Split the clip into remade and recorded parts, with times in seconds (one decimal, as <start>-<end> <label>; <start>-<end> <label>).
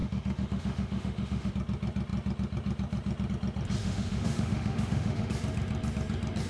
0.0-1.5 remade; 1.5-3.8 recorded; 3.8-5.3 remade; 5.3-6.5 recorded